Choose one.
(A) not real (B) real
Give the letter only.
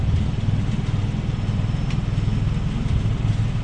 B